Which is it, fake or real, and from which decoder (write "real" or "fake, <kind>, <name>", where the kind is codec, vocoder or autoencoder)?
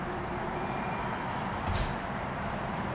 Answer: real